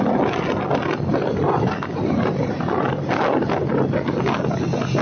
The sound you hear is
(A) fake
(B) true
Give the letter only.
B